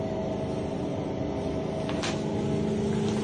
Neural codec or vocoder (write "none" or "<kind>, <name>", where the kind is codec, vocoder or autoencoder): none